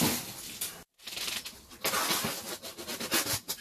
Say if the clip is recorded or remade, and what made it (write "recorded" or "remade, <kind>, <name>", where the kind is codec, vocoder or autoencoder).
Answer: recorded